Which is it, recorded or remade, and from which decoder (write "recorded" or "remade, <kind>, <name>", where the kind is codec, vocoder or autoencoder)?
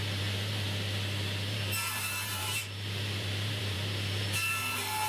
remade, vocoder, BigVGAN v2